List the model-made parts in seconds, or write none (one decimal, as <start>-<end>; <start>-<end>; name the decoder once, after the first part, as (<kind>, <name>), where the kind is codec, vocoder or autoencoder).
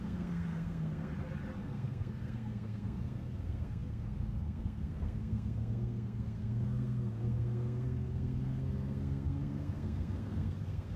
0.0-1.1 (codec, SNAC); 1.6-11.0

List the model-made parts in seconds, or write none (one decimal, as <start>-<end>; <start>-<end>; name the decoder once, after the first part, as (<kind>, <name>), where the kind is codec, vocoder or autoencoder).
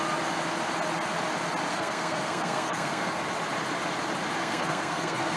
1.7-3.2 (codec, SNAC); 4.4-5.4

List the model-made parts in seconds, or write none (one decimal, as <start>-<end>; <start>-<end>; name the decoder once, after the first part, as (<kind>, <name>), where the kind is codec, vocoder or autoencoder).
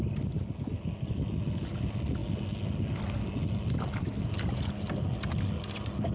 none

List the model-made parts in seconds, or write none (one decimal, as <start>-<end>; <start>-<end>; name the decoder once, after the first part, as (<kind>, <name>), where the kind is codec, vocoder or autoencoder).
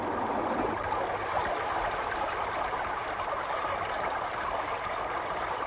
none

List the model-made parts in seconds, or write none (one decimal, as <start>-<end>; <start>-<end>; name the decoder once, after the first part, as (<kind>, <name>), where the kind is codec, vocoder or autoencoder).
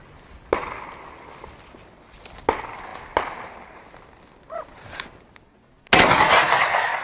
none